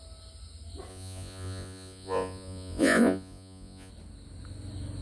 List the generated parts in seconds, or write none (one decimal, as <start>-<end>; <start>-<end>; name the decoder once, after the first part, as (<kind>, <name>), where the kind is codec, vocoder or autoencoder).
0.9-3.9 (vocoder, Vocos)